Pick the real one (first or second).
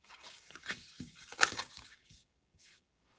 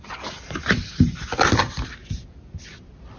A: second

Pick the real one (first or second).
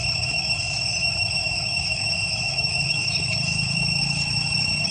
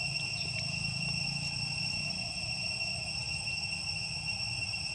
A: second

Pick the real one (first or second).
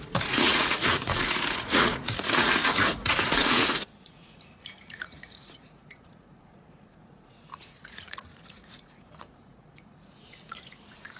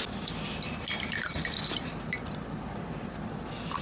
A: second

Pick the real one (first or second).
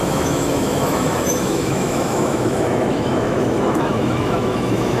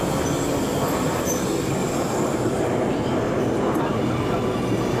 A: second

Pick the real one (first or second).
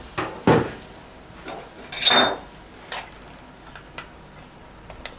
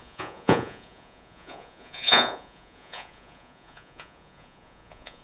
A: first